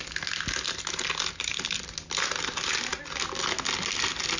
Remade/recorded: recorded